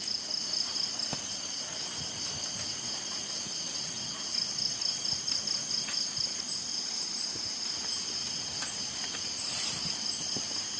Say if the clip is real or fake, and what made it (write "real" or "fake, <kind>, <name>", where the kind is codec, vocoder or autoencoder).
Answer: real